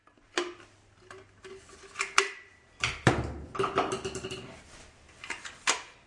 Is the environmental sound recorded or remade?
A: recorded